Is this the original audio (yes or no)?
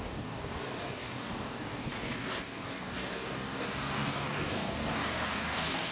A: no